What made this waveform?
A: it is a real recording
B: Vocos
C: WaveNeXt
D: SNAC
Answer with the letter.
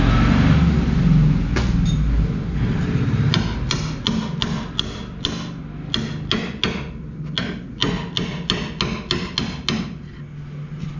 A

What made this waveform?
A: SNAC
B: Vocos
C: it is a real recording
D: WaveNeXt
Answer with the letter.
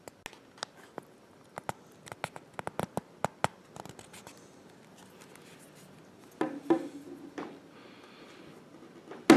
C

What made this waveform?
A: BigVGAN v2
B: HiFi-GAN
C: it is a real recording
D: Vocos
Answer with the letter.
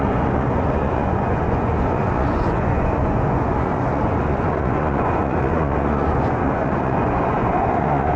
D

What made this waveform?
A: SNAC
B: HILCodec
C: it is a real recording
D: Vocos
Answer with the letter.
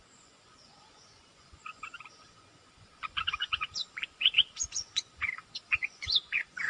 D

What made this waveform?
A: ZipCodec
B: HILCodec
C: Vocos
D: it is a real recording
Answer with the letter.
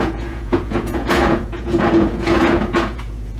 C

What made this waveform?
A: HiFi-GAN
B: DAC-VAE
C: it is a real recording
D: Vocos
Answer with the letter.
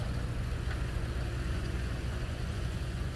D